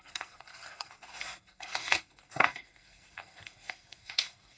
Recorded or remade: remade